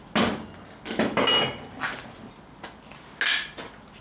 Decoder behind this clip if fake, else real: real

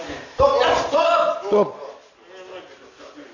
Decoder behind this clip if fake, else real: real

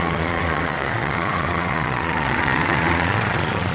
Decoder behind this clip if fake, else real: fake, vocoder, Vocos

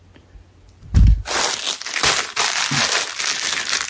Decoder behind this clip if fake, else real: real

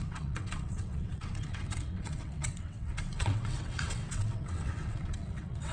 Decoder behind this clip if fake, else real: fake, vocoder, WaveNeXt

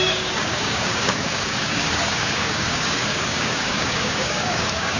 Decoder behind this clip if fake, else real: fake, codec, DAC